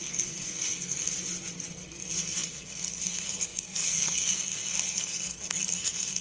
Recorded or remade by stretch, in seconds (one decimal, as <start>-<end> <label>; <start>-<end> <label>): 0.0-1.1 remade; 1.1-1.7 recorded; 1.7-6.2 remade